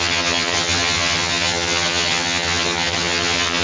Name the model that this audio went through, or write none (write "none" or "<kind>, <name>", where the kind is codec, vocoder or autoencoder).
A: vocoder, HiFi-GAN